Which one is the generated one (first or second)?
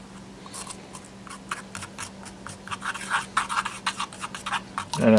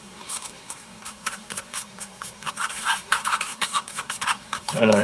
second